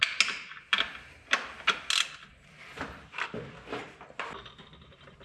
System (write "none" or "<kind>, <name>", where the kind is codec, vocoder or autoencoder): none